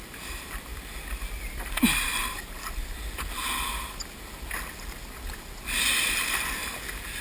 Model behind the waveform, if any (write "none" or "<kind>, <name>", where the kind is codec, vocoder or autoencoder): none